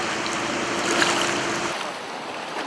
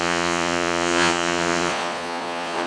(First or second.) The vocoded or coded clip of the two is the second